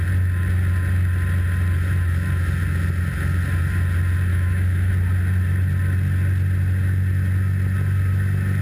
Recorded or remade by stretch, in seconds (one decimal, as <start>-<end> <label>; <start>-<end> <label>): 0.0-4.3 recorded; 4.3-4.9 remade; 4.9-8.6 recorded